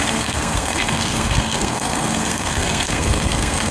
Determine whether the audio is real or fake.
fake